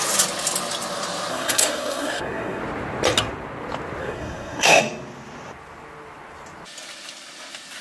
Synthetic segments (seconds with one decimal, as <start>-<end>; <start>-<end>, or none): 1.3-2.6; 4.0-4.8